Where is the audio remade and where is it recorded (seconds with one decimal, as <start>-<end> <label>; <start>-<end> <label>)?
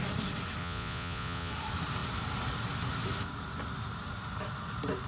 0.0-0.6 recorded; 0.6-1.5 remade; 1.5-5.1 recorded